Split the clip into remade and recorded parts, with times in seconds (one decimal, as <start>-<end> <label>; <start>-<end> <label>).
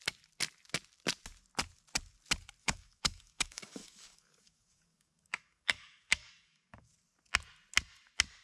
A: 0.0-2.6 recorded; 2.6-6.9 remade; 6.9-8.4 recorded